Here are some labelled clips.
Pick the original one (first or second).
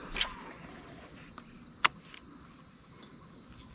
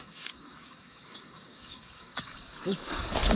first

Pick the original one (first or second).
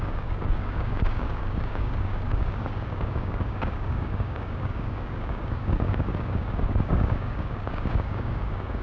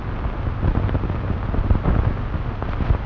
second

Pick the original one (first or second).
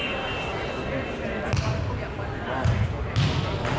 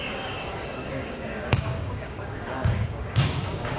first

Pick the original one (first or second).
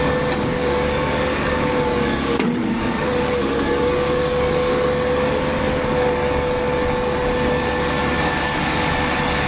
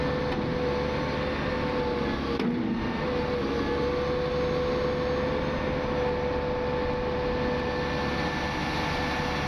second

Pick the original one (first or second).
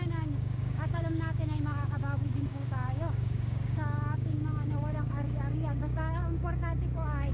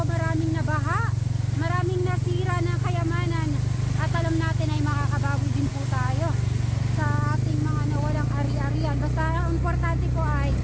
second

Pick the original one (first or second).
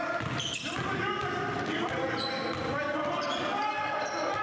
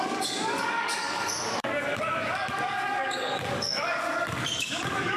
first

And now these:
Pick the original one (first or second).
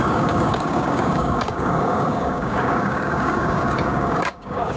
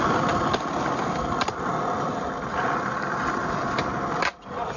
second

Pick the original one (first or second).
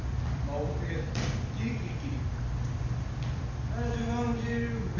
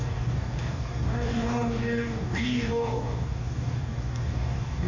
first